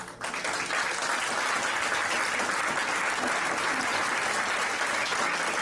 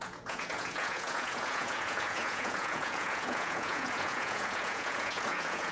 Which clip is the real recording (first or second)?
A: first